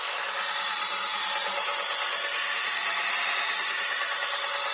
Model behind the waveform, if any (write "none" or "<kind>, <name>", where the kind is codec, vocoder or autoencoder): none